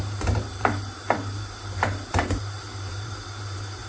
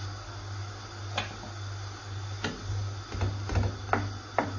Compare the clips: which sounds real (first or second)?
second